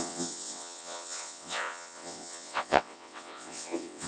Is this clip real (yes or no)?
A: no